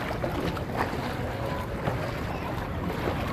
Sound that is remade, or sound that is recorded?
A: recorded